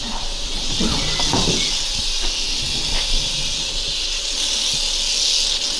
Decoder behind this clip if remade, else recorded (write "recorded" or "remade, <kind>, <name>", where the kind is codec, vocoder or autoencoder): recorded